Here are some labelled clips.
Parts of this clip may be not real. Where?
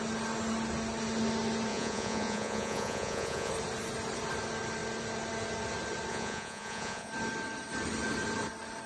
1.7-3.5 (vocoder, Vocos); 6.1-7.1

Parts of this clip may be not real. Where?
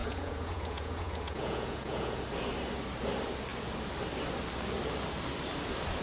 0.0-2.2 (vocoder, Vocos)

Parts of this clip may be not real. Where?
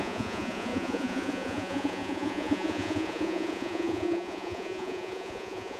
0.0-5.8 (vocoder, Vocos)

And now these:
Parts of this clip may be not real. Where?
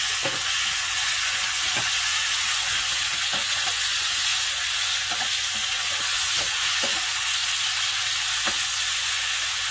0.0-7.4 (vocoder, Vocos); 8.5-9.7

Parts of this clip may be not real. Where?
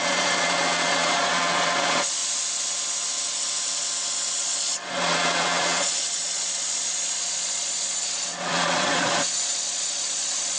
0.0-2.2 (vocoder, Vocos); 4.3-10.6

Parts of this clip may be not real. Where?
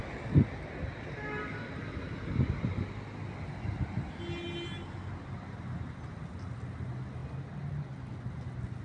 none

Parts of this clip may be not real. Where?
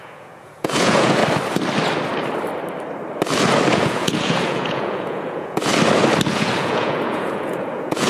0.0-1.2 (vocoder, Vocos); 3.7-5.7; 6.3-8.1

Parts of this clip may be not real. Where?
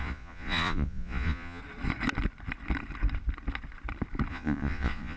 0.0-1.6 (vocoder, Vocos); 4.3-5.2